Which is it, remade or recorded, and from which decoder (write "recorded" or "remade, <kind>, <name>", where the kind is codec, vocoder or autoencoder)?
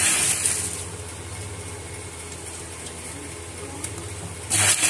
recorded